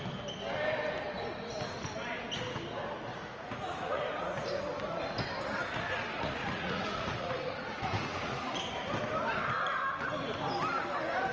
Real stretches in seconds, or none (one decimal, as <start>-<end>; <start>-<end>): 0.0-3.1; 4.0-6.1; 8.5-11.3